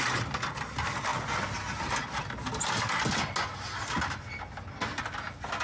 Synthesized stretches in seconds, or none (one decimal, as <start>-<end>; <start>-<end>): none